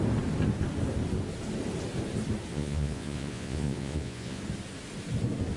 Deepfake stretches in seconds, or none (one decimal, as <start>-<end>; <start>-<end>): 2.5-4.4